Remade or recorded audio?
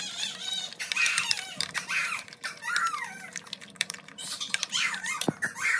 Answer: remade